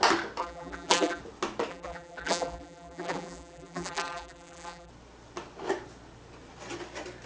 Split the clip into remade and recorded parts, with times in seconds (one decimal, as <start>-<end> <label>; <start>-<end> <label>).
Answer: 0.0-0.4 recorded; 0.4-1.2 remade; 1.2-1.7 recorded; 1.7-4.9 remade; 4.9-7.3 recorded